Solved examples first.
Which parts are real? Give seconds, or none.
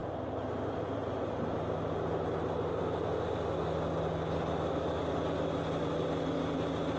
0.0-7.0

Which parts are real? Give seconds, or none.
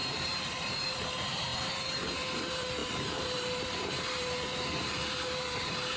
none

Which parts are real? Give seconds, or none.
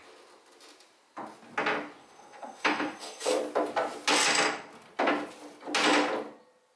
0.0-2.0; 3.4-6.8